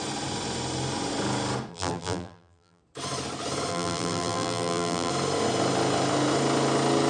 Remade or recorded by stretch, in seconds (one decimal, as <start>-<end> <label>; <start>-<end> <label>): 0.0-1.7 recorded; 1.7-2.8 remade; 2.8-3.7 recorded; 3.7-5.1 remade; 5.1-7.1 recorded